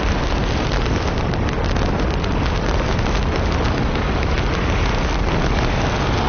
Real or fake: real